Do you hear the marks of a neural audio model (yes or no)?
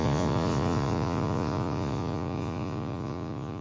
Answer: yes